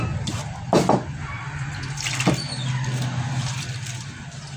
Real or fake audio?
real